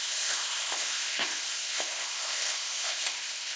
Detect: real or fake fake